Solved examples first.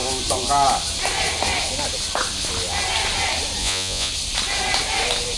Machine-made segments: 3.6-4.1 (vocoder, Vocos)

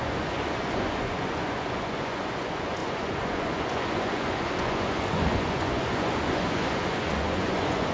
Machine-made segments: 0.0-7.9 (vocoder, Vocos)

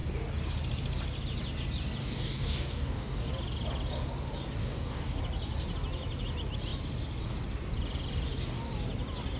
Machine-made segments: 2.0-3.3 (codec, DAC); 4.6-5.2

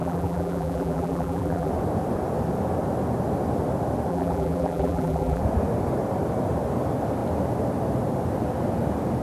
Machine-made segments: 0.0-1.7 (vocoder, BigVGAN v2); 4.1-5.4

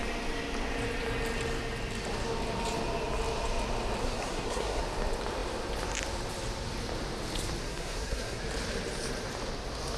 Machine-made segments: 4.0-4.8 (codec, SNAC); 7.6-8.4